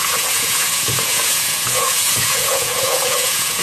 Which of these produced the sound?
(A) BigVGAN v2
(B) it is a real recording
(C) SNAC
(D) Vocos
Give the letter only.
D